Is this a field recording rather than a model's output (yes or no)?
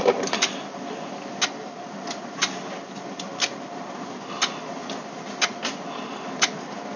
yes